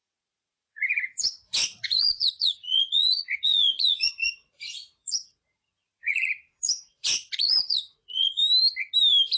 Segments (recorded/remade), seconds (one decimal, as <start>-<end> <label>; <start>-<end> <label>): 0.0-8.4 remade; 8.4-9.4 recorded